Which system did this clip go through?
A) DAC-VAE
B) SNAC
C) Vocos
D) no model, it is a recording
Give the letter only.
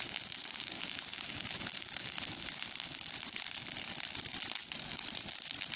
D